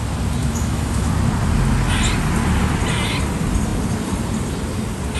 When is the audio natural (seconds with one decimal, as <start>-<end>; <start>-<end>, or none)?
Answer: 0.0-0.4; 1.1-5.2